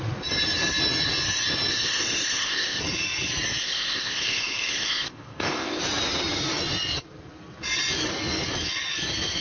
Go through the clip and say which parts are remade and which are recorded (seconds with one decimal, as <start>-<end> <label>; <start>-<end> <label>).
0.0-1.7 recorded; 1.7-2.8 remade; 2.8-3.6 recorded; 3.6-5.8 remade; 5.8-9.4 recorded

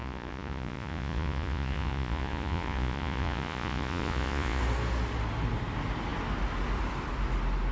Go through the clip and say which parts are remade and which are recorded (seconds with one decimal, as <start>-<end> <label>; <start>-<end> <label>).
0.0-4.6 remade; 4.6-7.7 recorded

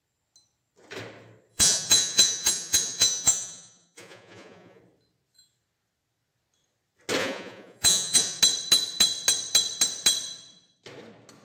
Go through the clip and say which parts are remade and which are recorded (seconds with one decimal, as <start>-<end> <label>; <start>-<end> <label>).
0.0-1.5 recorded; 1.5-4.8 remade; 4.8-7.2 recorded; 7.2-8.4 remade; 8.4-11.4 recorded